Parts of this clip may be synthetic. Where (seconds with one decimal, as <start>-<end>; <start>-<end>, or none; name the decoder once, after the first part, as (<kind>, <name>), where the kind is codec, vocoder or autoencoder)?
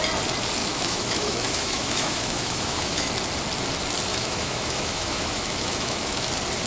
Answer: 0.6-3.1 (autoencoder, DAC-VAE); 4.1-6.3